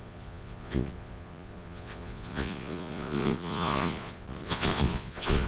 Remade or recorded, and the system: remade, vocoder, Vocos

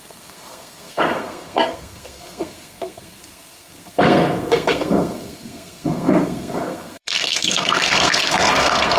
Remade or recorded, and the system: remade, codec, SNAC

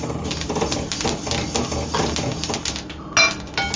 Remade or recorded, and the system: recorded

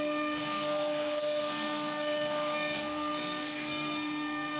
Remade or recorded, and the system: remade, codec, SNAC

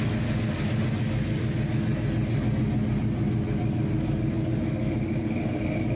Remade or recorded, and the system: recorded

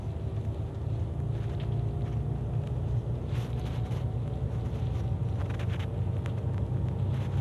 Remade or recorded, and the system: recorded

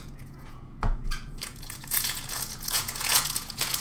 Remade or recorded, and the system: remade, vocoder, Vocos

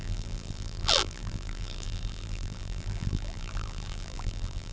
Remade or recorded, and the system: remade, vocoder, BigVGAN v2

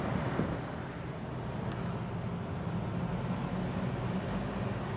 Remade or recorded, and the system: recorded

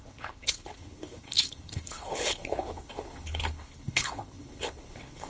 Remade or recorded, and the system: remade, codec, HILCodec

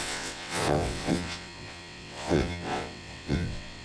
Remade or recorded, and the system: remade, vocoder, WaveNeXt